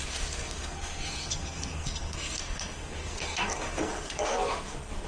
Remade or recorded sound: remade